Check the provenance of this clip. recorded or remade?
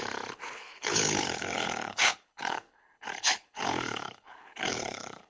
remade